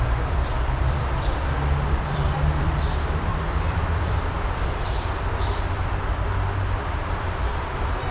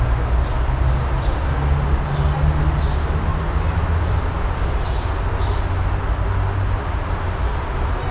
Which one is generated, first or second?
first